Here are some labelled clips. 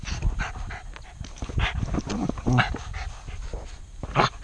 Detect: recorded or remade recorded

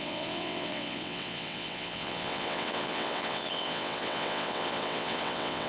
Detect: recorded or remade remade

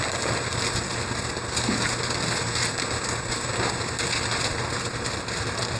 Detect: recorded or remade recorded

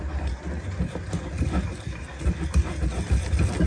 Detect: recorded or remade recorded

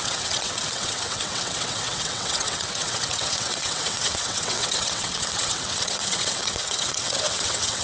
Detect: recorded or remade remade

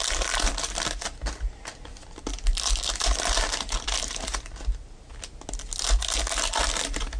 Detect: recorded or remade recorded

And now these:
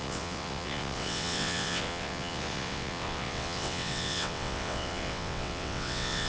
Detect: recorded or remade remade